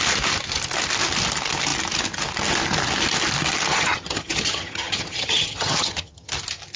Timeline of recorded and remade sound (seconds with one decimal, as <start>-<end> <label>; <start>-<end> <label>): 0.0-3.7 recorded; 3.7-6.3 remade; 6.3-6.8 recorded